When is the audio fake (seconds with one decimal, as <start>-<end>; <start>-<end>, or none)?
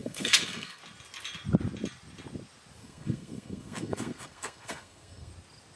0.0-0.8; 2.8-5.3